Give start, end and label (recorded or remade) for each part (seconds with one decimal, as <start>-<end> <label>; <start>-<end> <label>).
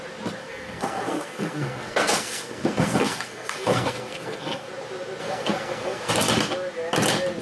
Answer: 0.0-0.4 recorded; 0.4-4.7 remade; 4.7-5.2 recorded; 5.2-6.1 remade; 6.1-7.4 recorded